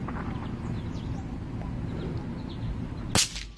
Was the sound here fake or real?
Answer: real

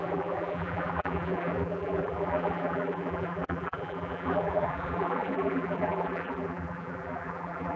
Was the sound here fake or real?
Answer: fake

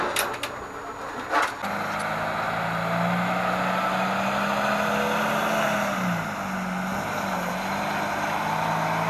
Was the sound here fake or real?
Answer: real